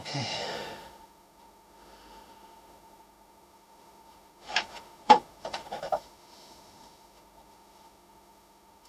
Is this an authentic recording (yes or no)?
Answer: no